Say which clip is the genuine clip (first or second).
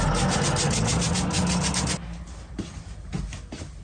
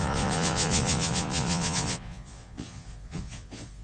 first